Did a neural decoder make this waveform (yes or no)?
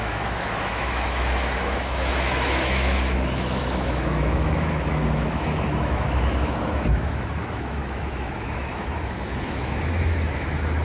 yes